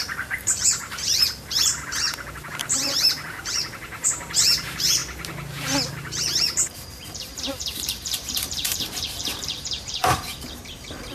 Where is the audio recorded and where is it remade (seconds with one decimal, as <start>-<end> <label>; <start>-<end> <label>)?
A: 0.0-5.0 remade; 5.0-5.9 recorded; 5.9-11.1 remade

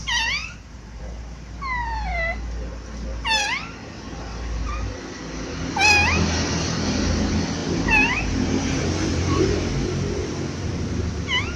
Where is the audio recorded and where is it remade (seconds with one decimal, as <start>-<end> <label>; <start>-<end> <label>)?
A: 0.0-0.4 recorded; 0.4-1.0 remade; 1.0-7.6 recorded; 7.6-9.7 remade; 9.7-11.6 recorded

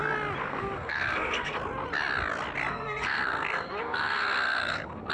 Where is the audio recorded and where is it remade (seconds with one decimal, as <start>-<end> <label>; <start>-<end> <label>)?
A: 0.0-0.4 recorded; 0.4-1.6 remade; 1.6-2.7 recorded; 2.7-5.1 remade

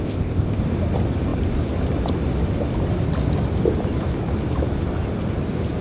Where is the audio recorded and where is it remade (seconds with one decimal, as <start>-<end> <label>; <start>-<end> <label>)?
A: 0.0-0.6 remade; 0.6-5.8 recorded